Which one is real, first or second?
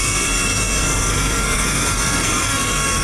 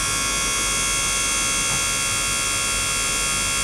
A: second